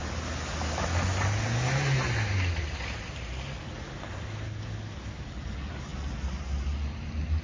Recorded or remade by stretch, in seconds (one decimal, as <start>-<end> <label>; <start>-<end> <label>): 0.0-7.4 recorded